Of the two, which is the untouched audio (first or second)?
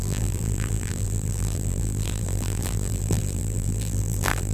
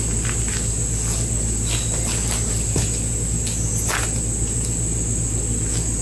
second